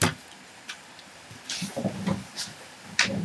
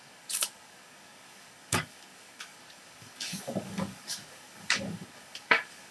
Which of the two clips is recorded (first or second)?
first